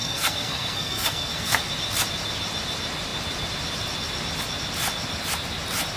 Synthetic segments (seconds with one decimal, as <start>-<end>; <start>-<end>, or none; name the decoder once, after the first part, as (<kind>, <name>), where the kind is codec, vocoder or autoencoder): 0.0-1.7 (codec, SNAC)